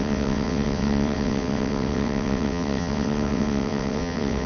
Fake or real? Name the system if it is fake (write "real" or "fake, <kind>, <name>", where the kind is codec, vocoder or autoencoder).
fake, vocoder, WaveNeXt